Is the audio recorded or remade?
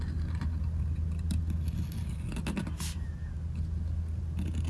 recorded